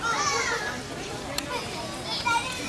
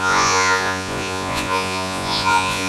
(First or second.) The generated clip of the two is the second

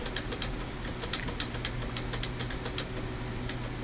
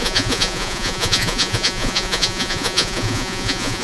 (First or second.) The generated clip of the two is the second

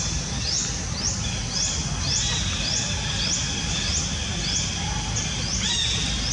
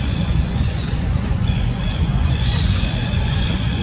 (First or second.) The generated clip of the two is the second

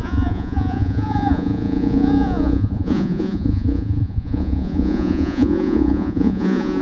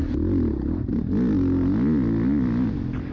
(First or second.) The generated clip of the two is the first